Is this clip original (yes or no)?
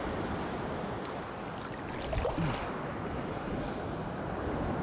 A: yes